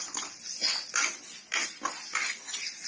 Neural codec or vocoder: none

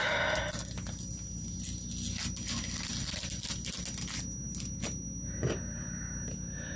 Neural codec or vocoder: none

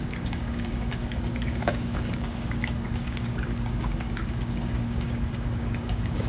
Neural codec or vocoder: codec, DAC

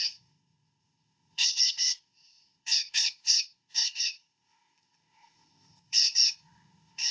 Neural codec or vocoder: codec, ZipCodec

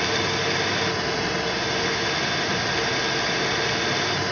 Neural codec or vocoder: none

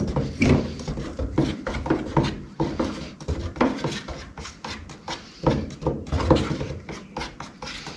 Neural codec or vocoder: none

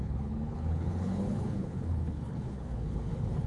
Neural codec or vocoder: codec, HILCodec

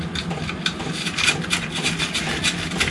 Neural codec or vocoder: none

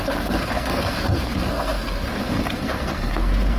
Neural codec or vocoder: codec, SNAC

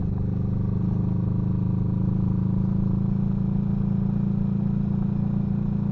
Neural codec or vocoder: none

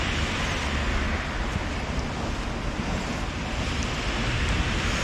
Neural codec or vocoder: none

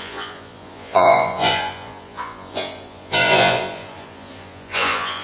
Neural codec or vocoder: vocoder, Vocos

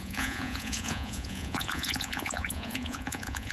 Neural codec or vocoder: vocoder, Vocos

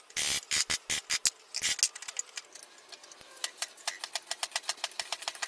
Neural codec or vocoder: none